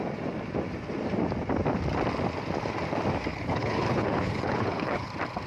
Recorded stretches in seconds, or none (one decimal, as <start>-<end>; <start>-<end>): 0.0-3.3; 5.1-5.5